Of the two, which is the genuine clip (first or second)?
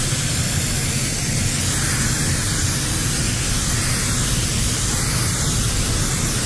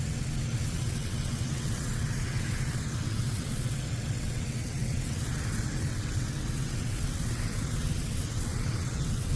first